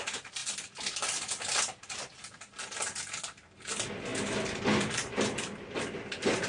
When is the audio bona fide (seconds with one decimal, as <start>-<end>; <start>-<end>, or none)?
0.0-6.5